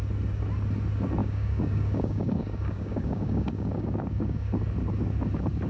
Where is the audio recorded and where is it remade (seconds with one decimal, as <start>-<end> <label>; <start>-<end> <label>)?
0.0-1.2 recorded; 1.2-4.6 remade; 4.6-5.7 recorded